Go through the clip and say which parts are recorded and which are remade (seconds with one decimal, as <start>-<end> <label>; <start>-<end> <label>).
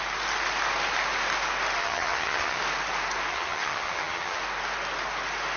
0.0-1.8 recorded; 1.8-2.6 remade; 2.6-3.3 recorded; 3.3-4.4 remade; 4.4-5.6 recorded